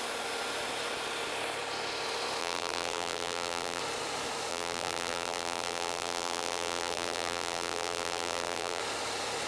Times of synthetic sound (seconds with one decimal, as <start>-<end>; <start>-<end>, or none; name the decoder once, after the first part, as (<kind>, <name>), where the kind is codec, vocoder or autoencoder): 2.4-3.8 (vocoder, BigVGAN v2); 4.5-8.8